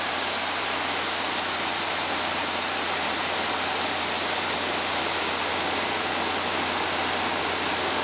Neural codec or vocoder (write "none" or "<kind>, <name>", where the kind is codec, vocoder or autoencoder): none